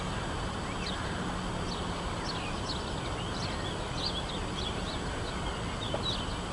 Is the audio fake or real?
real